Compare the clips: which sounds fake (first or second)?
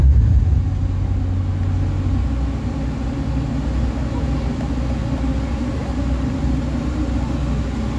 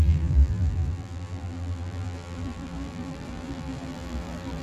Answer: second